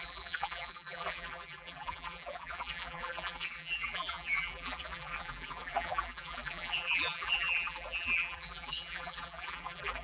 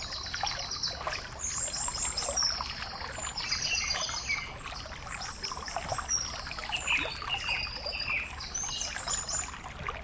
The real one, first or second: second